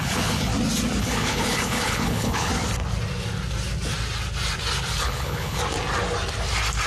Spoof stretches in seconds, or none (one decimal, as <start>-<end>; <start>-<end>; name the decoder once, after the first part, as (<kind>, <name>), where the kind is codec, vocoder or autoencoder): 0.0-0.5 (codec, HILCodec); 1.0-2.5; 5.0-5.6